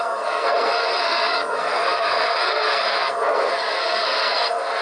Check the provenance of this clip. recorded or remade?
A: remade